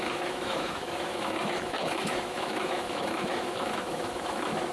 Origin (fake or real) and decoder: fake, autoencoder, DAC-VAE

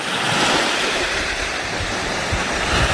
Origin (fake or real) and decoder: fake, vocoder, BigVGAN v2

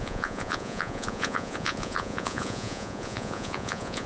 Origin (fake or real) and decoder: fake, vocoder, Vocos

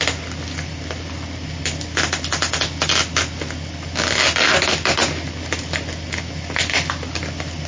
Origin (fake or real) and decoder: real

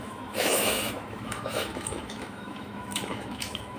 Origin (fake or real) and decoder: fake, autoencoder, DAC-VAE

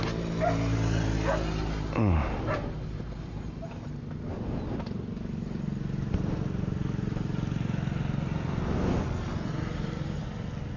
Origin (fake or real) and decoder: real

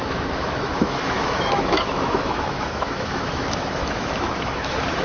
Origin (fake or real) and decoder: fake, autoencoder, DAC-VAE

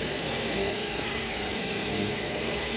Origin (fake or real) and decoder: fake, codec, SNAC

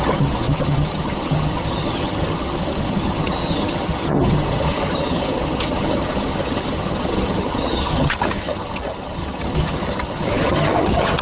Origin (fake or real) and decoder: fake, vocoder, HiFi-GAN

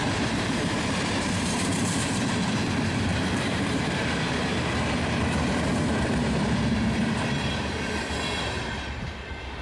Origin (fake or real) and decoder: fake, vocoder, BigVGAN v2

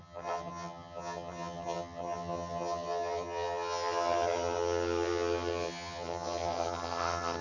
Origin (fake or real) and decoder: fake, vocoder, HiFi-GAN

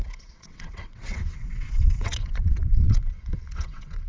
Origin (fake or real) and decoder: fake, vocoder, WaveNeXt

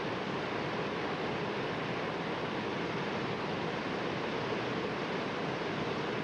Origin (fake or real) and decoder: real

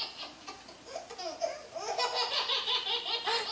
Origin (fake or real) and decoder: real